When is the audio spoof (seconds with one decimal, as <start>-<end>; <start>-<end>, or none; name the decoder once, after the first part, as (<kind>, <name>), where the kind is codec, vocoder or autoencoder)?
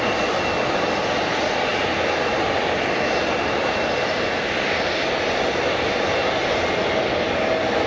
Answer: none